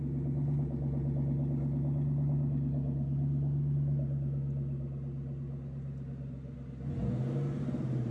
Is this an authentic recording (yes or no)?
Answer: yes